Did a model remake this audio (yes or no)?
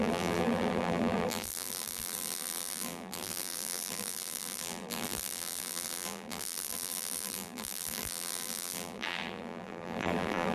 yes